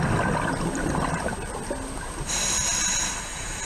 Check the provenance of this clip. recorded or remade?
recorded